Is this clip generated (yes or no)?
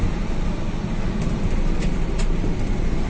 no